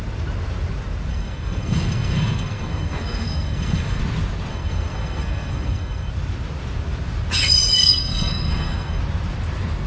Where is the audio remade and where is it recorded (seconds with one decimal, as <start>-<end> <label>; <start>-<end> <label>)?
0.0-1.1 recorded; 1.1-4.0 remade; 4.0-4.5 recorded; 4.5-6.1 remade; 6.1-7.8 recorded; 7.8-9.0 remade; 9.0-9.9 recorded